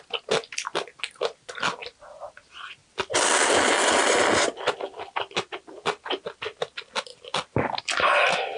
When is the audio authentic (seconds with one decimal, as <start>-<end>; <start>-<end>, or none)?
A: 0.0-2.8; 3.4-7.1; 7.8-8.6